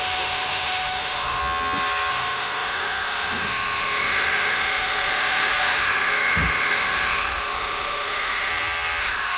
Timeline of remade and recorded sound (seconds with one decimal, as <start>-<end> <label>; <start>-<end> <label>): 0.0-1.4 remade; 1.4-2.1 recorded; 2.1-8.5 remade; 8.5-9.0 recorded; 9.0-9.4 remade